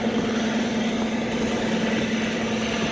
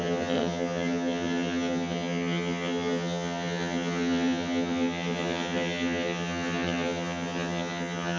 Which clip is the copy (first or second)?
second